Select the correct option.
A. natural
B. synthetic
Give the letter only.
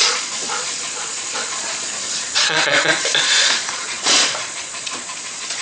B